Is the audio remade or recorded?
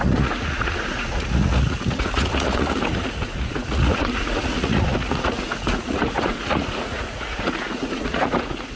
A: remade